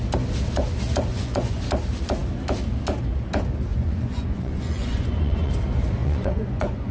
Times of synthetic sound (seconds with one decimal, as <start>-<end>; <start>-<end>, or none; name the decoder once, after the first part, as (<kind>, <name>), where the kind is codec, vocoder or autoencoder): 1.1-1.6 (vocoder, Vocos); 3.7-5.5; 6.0-6.9